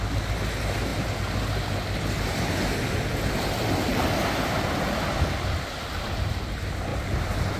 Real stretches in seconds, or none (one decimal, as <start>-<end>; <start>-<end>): 0.0-7.6